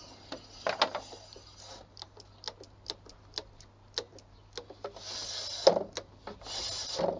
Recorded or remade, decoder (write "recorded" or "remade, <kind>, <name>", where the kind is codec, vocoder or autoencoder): recorded